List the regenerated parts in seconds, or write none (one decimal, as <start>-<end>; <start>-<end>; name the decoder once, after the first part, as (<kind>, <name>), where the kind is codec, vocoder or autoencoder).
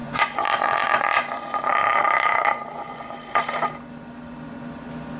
0.0-3.1 (vocoder, Vocos)